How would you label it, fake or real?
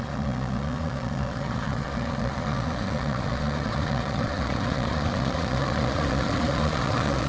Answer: fake